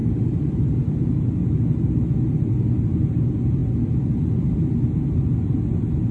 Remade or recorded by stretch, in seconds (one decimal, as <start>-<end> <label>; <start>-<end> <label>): 0.0-6.1 recorded

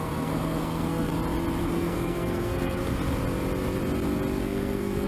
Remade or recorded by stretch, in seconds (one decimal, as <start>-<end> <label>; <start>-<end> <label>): 0.0-1.1 remade; 1.1-1.6 recorded; 1.6-2.8 remade; 2.8-4.4 recorded; 4.4-5.1 remade

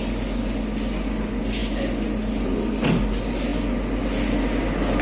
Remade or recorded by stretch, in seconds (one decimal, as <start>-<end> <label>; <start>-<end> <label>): 0.0-5.0 recorded

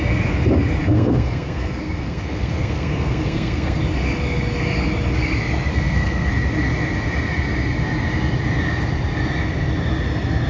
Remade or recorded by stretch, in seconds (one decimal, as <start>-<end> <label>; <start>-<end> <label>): 0.0-0.8 recorded; 0.8-3.8 remade; 3.8-5.7 recorded; 5.7-6.3 remade; 6.3-10.5 recorded